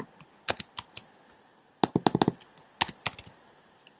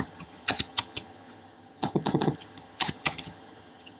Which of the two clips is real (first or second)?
first